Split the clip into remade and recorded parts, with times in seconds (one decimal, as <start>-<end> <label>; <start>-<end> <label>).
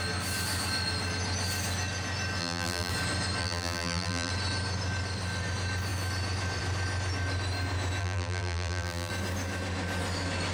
0.0-2.4 recorded; 2.4-2.9 remade; 2.9-3.4 recorded; 3.4-4.3 remade; 4.3-8.0 recorded; 8.0-9.1 remade; 9.1-10.5 recorded